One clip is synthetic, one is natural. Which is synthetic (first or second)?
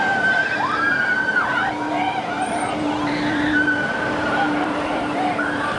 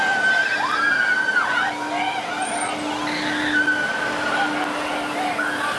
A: first